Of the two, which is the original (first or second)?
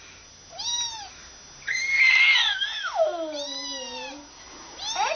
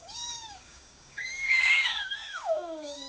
first